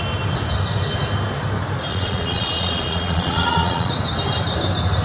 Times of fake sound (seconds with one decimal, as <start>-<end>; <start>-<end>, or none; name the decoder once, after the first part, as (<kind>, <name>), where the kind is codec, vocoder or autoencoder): 1.9-3.9 (vocoder, Vocos)